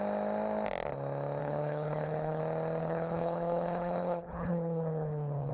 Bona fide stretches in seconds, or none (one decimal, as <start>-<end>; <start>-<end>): 0.0-1.4; 2.4-2.8